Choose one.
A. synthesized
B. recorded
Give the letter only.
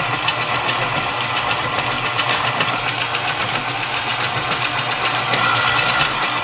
B